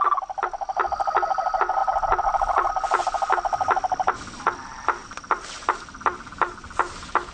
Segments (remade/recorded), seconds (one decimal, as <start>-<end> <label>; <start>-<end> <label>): 0.0-1.8 recorded; 1.8-2.7 remade; 2.7-5.0 recorded; 5.0-6.3 remade; 6.3-7.3 recorded